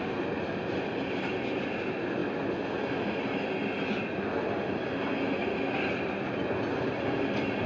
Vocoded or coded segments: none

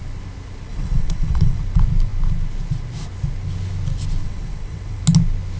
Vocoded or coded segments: 0.7-1.6 (vocoder, WaveNeXt); 4.2-5.0

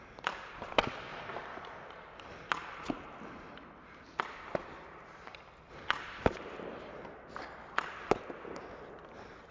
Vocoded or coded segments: none